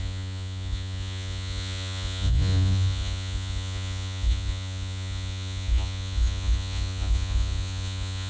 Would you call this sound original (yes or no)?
no